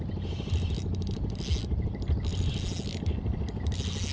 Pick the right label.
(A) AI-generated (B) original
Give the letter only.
B